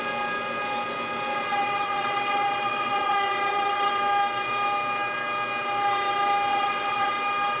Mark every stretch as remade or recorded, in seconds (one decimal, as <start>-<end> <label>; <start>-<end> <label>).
0.0-1.5 recorded; 1.5-3.9 remade; 3.9-6.5 recorded; 6.5-7.1 remade; 7.1-7.6 recorded